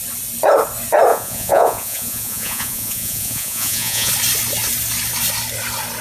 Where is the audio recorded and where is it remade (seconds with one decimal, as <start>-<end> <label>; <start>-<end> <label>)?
0.0-1.1 recorded; 1.1-4.1 remade; 4.1-6.0 recorded